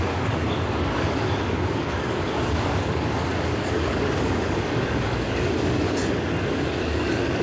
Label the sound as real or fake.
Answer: fake